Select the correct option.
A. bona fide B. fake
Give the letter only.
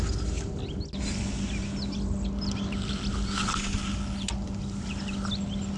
A